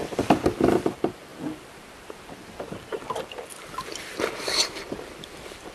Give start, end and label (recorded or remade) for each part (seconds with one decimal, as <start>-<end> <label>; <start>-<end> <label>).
0.0-5.7 remade